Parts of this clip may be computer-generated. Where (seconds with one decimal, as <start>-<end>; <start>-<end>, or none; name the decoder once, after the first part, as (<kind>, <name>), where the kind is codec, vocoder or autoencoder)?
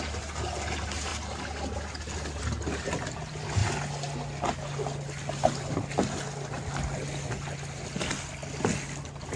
none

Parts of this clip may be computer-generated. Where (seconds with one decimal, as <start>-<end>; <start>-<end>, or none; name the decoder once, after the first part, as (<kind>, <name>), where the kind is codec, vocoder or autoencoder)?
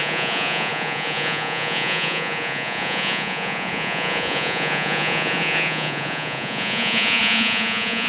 0.0-8.1 (vocoder, Vocos)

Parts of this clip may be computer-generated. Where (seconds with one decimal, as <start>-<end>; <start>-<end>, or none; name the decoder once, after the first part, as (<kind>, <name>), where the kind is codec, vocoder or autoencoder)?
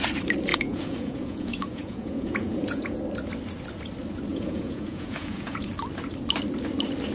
0.5-3.0 (vocoder, Vocos); 4.3-5.7